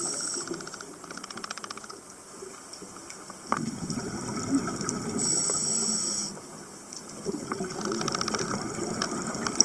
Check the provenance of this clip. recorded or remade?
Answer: recorded